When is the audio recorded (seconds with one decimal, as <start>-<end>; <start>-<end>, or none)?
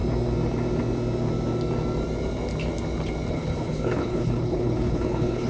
0.0-3.3